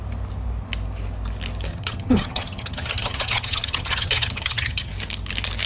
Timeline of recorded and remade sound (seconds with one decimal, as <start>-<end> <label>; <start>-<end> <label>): 0.0-1.7 recorded; 1.7-4.9 remade; 4.9-5.7 recorded